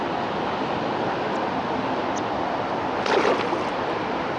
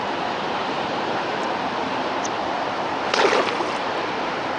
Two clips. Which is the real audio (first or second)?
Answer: first